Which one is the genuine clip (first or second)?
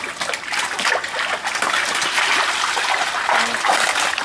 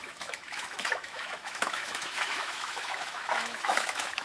first